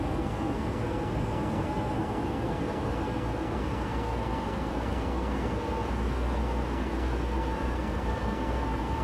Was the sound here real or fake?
fake